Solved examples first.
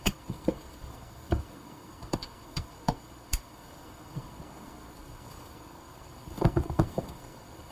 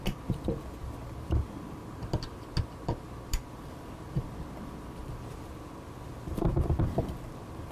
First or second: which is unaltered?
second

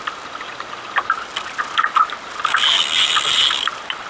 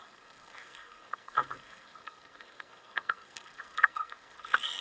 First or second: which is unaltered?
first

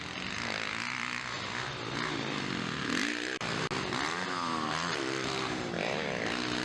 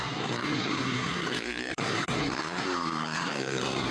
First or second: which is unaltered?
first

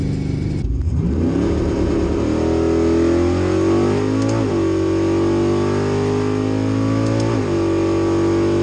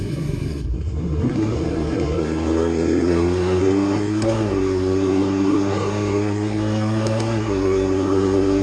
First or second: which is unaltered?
first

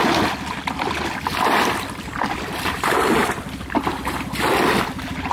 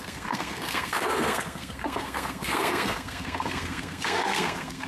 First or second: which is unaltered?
first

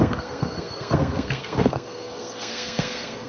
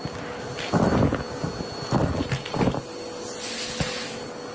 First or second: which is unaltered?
second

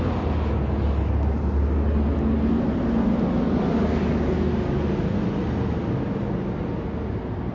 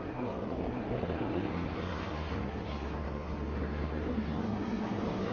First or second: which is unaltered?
first